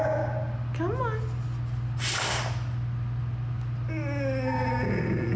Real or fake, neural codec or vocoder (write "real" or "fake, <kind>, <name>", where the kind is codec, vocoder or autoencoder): real